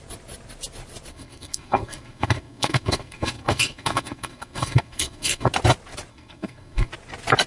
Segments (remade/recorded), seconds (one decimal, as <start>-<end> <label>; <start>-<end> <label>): 0.0-1.1 recorded; 1.1-5.5 remade; 5.5-6.1 recorded; 6.1-6.9 remade; 6.9-7.5 recorded